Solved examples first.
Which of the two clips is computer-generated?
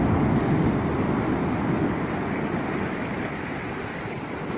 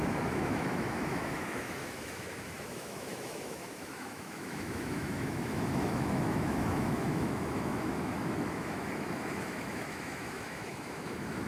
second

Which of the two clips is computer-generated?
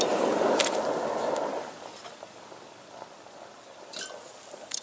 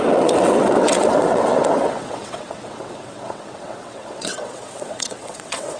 second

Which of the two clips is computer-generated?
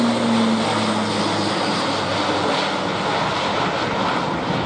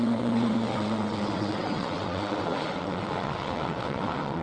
second